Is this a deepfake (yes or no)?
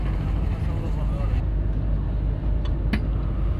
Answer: no